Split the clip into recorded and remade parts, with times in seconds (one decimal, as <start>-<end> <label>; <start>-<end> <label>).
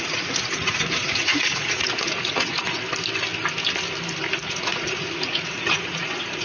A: 0.0-2.8 remade; 2.8-4.4 recorded; 4.4-6.4 remade